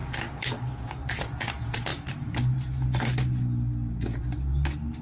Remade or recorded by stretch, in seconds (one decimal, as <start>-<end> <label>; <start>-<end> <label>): 0.0-1.0 remade; 1.0-5.0 recorded

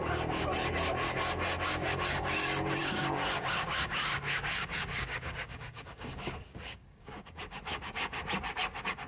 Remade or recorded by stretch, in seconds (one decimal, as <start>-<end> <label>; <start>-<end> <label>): 0.0-0.5 remade; 0.5-2.8 recorded; 2.8-8.2 remade; 8.2-9.1 recorded

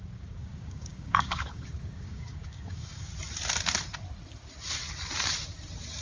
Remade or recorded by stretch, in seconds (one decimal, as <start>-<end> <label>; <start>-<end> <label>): 0.0-3.1 remade; 3.1-6.0 recorded

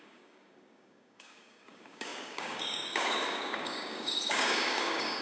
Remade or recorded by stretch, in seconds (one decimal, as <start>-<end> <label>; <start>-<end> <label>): 0.0-5.2 remade

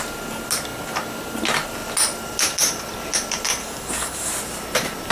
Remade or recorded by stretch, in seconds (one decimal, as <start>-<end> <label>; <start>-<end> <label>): 0.0-3.6 recorded; 3.6-4.3 remade; 4.3-5.1 recorded

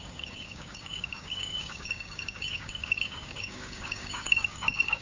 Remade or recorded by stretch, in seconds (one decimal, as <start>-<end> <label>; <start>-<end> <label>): 0.0-5.0 remade